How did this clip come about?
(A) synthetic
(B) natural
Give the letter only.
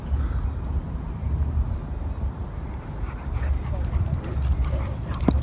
B